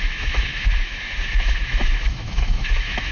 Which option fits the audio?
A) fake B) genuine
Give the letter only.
A